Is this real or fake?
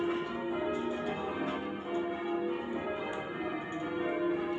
real